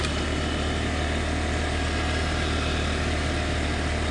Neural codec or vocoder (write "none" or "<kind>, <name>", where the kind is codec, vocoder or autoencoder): none